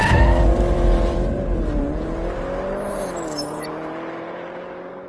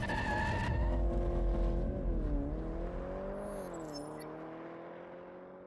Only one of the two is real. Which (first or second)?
second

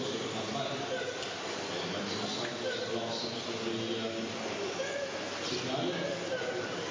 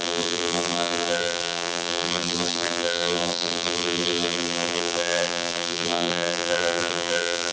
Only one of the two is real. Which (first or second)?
first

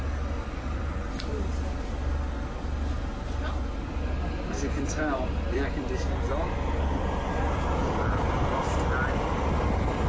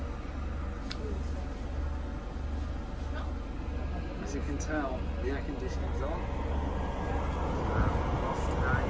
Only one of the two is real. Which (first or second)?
second